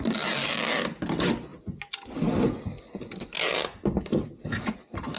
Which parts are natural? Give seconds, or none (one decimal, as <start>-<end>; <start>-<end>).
0.0-5.2